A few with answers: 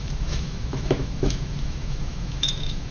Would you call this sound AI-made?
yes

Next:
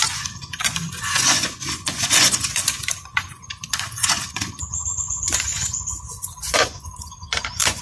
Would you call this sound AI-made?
yes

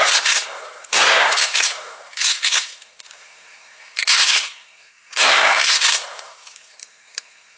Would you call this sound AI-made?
yes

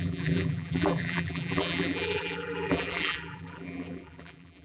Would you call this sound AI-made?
yes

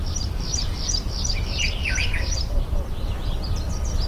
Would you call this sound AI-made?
yes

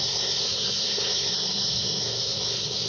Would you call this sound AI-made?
yes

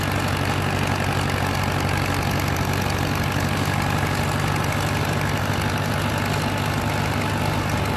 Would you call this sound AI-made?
no